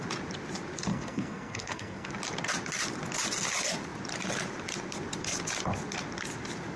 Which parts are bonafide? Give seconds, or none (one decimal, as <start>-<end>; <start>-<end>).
0.0-0.9; 2.1-6.8